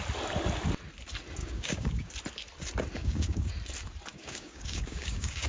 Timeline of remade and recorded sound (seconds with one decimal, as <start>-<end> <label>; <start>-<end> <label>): 0.0-1.4 recorded; 1.4-2.1 remade; 2.1-3.0 recorded; 3.0-3.5 remade; 3.5-4.1 recorded; 4.1-5.5 remade